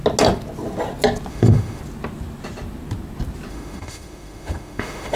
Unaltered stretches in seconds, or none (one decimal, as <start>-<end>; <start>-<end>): 0.0-1.3; 1.8-3.5